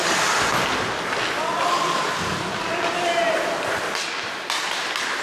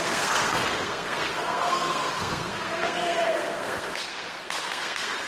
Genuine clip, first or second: first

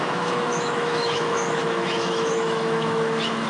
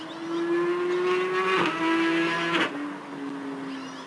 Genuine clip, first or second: second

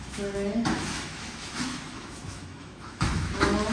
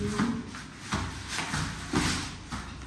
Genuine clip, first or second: second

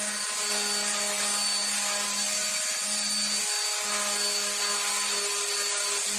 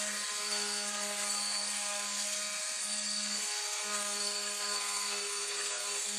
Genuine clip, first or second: first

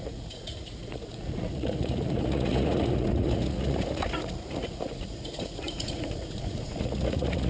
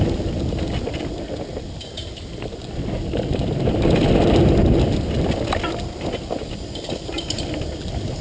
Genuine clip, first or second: second